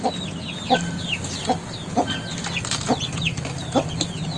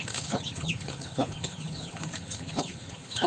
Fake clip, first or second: second